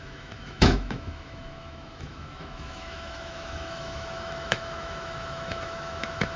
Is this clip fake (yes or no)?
yes